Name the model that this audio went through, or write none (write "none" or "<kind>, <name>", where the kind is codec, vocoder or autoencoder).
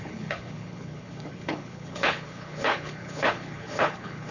codec, HILCodec